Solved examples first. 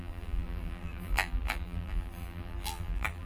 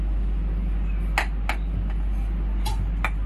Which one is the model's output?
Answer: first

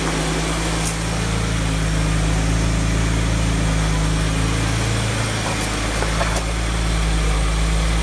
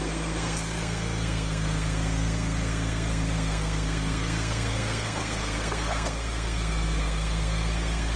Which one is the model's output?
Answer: second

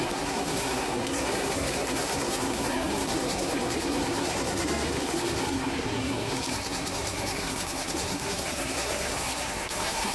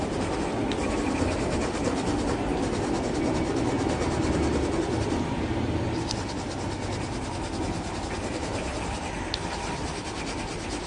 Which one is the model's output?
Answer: first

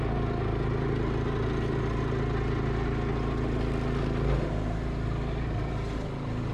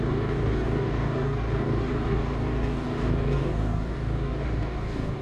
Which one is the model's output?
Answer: second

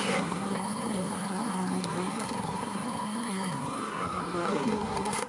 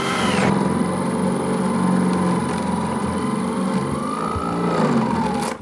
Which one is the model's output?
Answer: first